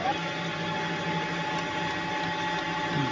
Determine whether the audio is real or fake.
real